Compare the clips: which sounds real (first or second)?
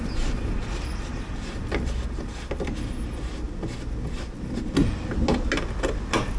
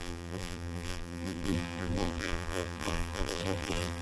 first